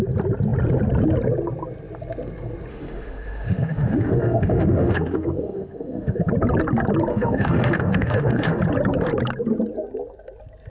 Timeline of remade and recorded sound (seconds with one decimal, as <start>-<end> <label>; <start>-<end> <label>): 0.0-2.7 recorded; 2.7-6.3 remade; 6.3-7.1 recorded; 7.1-8.6 remade; 8.6-10.7 recorded